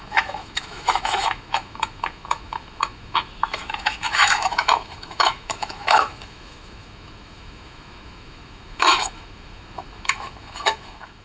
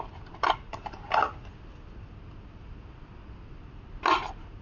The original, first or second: second